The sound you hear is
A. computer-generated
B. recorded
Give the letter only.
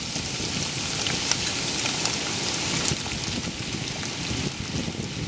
B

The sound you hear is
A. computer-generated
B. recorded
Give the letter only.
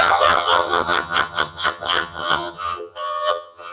A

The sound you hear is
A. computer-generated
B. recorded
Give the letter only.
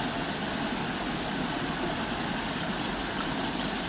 B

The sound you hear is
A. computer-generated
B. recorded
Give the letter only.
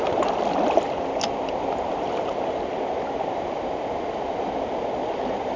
B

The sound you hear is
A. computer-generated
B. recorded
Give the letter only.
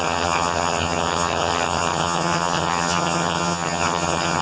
A